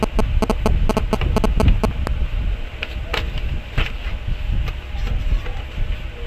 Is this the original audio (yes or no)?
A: yes